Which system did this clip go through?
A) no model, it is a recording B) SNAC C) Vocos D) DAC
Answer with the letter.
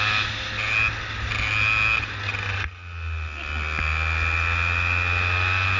A